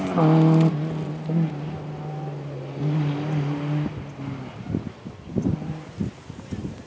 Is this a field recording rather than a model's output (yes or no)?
yes